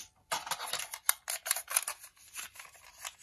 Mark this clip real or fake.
real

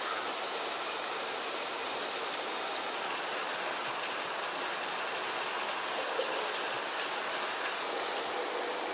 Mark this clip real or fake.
real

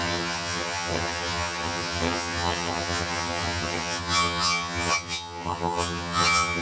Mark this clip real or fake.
fake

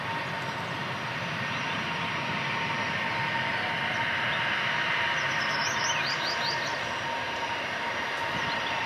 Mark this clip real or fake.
real